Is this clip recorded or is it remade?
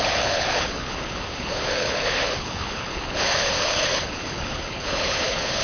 remade